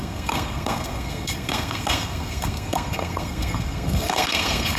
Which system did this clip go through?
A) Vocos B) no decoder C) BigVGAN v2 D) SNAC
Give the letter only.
D